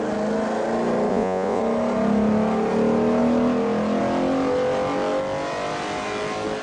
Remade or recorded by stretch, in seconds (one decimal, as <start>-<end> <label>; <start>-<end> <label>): 0.0-1.1 recorded; 1.1-1.6 remade; 1.6-6.6 recorded